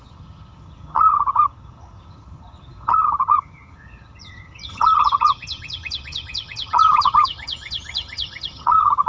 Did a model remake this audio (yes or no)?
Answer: yes